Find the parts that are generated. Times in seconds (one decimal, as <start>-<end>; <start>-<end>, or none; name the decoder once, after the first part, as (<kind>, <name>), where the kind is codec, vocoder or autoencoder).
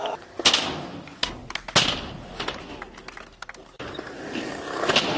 none